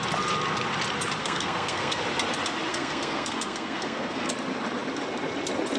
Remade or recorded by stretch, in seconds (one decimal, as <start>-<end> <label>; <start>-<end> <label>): 0.0-1.2 recorded; 1.2-2.0 remade; 2.0-2.7 recorded; 2.7-4.3 remade; 4.3-5.8 recorded